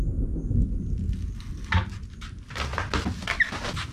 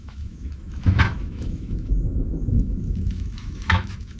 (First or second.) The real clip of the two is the first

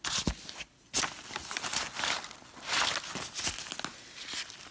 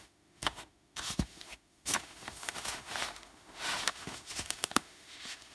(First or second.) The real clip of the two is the first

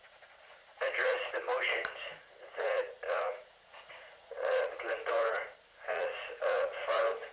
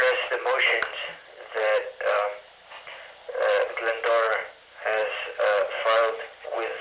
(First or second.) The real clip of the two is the second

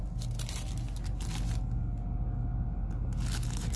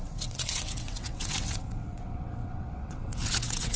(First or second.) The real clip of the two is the first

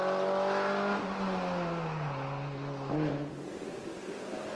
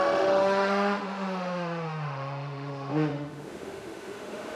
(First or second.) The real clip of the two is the first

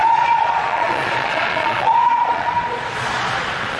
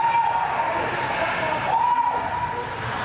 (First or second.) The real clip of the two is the second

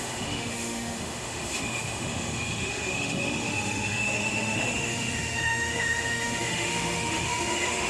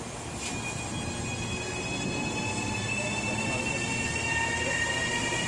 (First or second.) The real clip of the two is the second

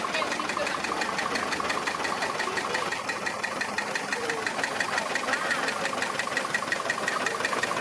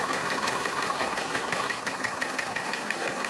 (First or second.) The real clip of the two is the first